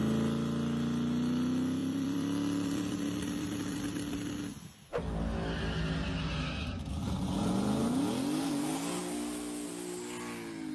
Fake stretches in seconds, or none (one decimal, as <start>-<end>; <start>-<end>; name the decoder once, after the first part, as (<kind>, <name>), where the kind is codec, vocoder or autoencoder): 1.8-4.4 (vocoder, BigVGAN v2)